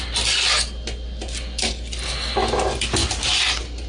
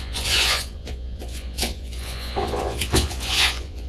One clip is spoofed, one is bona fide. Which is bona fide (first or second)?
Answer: first